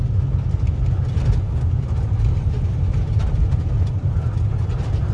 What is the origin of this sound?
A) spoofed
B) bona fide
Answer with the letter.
B